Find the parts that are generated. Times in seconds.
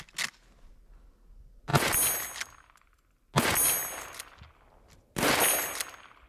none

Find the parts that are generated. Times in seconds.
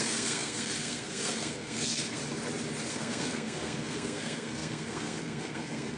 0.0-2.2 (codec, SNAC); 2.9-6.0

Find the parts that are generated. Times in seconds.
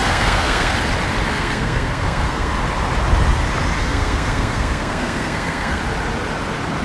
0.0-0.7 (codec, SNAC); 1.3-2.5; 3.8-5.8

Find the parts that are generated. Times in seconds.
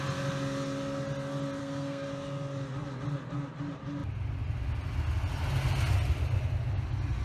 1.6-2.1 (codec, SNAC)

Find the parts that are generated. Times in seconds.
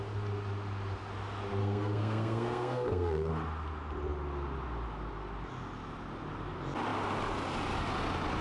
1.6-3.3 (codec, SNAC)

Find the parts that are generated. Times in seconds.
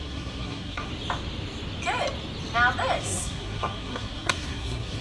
0.0-0.9 (codec, SNAC); 3.0-5.0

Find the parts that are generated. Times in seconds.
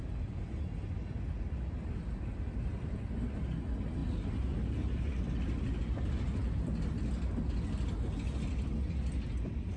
none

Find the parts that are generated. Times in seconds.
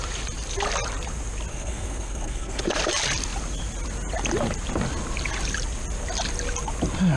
1.5-2.6 (codec, SNAC)